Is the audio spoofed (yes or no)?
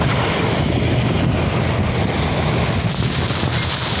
no